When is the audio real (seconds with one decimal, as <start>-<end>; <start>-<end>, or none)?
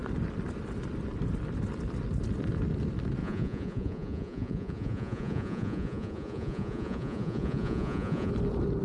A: 0.0-3.2; 8.3-8.8